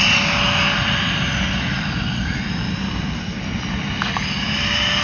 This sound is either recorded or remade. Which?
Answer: recorded